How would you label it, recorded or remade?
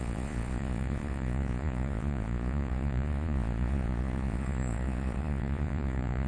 remade